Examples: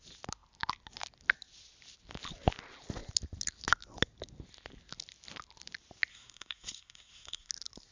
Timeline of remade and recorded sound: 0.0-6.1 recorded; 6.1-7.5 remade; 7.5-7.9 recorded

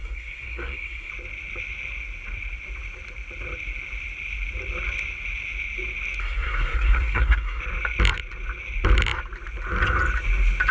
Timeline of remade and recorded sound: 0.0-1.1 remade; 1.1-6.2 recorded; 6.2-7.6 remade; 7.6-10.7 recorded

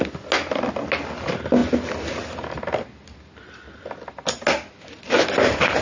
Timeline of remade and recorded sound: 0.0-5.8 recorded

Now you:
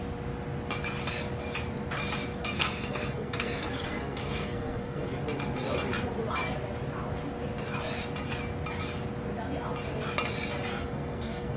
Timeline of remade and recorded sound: 0.0-2.4 recorded; 2.4-5.1 remade; 5.1-10.7 recorded; 10.7-11.6 remade

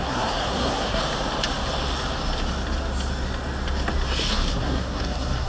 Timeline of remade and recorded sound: 0.0-1.0 remade; 1.0-4.3 recorded; 4.3-5.5 remade

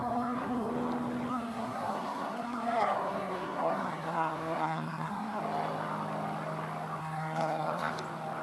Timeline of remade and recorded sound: 0.0-0.7 remade; 0.7-1.3 recorded; 1.3-5.4 remade; 5.4-7.0 recorded; 7.0-7.9 remade; 7.9-8.4 recorded

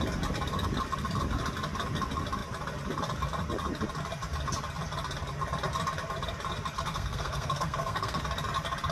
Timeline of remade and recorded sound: 0.0-6.9 recorded; 6.9-8.2 remade; 8.2-8.9 recorded

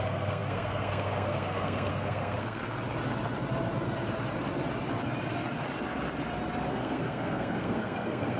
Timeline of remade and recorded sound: 0.0-2.6 remade; 2.6-6.7 recorded; 6.7-8.4 remade